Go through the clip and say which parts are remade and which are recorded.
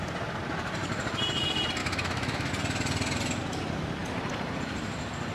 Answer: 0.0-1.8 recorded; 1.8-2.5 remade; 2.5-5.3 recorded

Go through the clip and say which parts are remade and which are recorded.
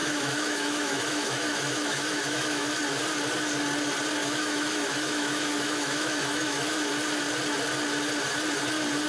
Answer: 0.0-2.8 remade; 2.8-4.2 recorded; 4.2-6.9 remade; 6.9-9.1 recorded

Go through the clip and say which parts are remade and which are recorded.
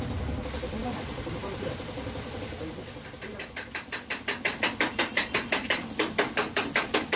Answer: 0.0-7.2 recorded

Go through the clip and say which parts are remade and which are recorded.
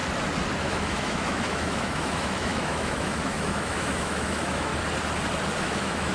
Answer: 0.0-0.6 recorded; 0.6-4.7 remade; 4.7-5.6 recorded; 5.6-6.1 remade